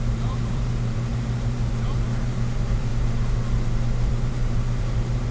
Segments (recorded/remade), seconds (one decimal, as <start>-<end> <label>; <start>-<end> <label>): 0.0-2.9 remade; 2.9-4.1 recorded; 4.1-5.3 remade